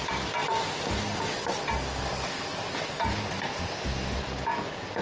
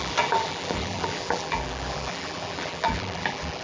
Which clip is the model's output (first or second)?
second